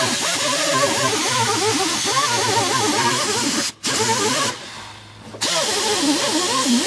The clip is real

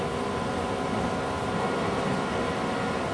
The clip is real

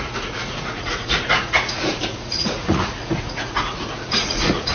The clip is fake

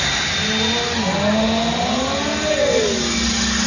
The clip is real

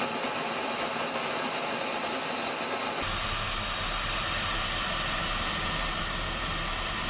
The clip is real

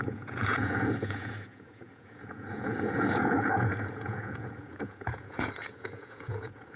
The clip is fake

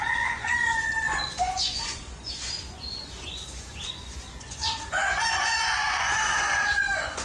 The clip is fake